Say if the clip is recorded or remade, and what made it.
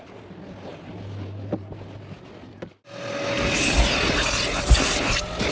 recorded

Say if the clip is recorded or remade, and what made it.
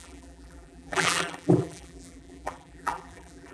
remade, vocoder, BigVGAN v2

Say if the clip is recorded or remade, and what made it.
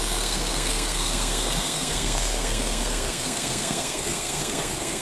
remade, codec, SNAC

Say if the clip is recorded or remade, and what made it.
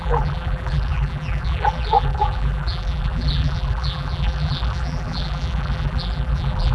remade, vocoder, BigVGAN v2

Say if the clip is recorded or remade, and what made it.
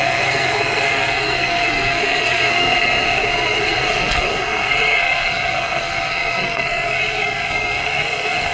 remade, codec, SNAC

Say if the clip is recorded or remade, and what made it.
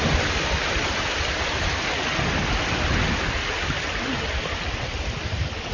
recorded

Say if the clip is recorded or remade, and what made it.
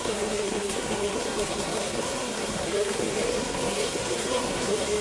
remade, codec, SNAC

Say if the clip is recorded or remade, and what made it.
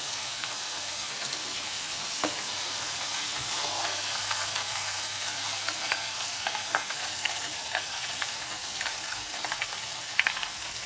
remade, codec, SNAC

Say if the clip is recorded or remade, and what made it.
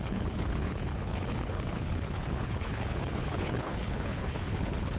remade, codec, HILCodec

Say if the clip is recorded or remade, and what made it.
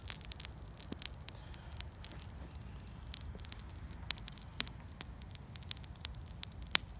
recorded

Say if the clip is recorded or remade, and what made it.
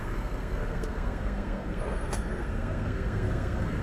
remade, codec, SNAC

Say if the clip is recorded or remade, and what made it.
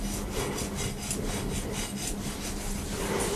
recorded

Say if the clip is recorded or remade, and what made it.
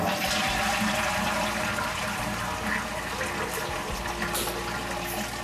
recorded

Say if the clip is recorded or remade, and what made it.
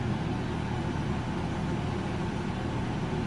recorded